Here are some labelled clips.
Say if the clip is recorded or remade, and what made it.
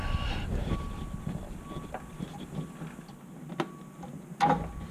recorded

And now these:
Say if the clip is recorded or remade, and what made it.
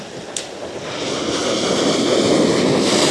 recorded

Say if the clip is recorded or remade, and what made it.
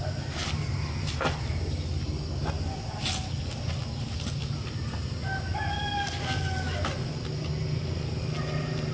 recorded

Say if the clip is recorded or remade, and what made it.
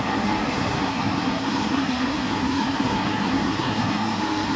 remade, codec, SNAC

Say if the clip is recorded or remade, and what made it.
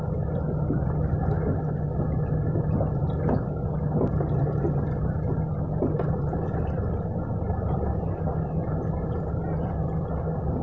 recorded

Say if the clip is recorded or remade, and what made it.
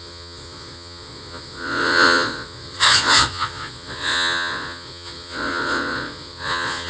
remade, vocoder, Vocos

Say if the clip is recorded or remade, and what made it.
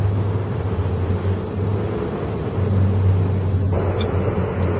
recorded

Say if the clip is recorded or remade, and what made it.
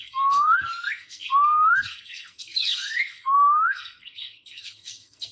remade, codec, SNAC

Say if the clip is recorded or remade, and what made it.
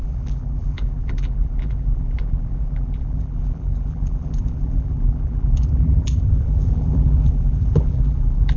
remade, vocoder, BigVGAN v2